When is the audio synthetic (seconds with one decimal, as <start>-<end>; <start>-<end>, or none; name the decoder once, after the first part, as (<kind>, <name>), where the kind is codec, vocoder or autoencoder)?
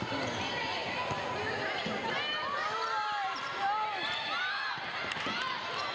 none